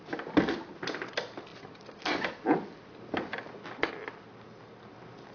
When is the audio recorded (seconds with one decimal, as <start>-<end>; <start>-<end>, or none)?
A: 0.0-1.5; 3.9-5.3

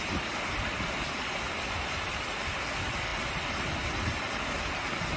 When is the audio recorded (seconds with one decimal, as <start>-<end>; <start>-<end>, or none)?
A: 0.0-5.2